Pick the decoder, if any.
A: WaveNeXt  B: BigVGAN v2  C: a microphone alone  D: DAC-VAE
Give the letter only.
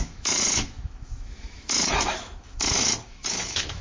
D